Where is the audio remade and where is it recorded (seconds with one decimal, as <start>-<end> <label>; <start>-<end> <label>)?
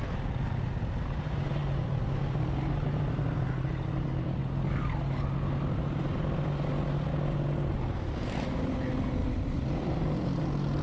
0.0-1.6 recorded; 1.6-2.1 remade; 2.1-9.2 recorded; 9.2-10.4 remade; 10.4-10.8 recorded